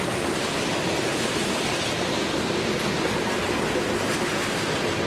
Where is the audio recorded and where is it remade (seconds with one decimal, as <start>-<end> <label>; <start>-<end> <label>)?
0.0-5.1 recorded